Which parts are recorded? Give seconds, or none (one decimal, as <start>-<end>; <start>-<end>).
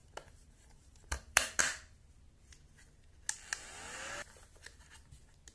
1.6-5.5